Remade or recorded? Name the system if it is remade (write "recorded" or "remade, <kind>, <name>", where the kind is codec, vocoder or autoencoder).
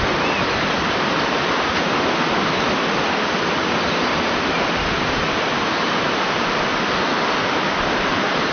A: recorded